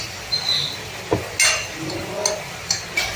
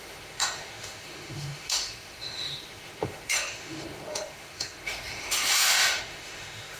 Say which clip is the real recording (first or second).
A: first